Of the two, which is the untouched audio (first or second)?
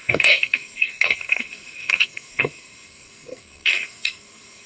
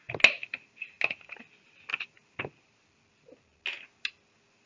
second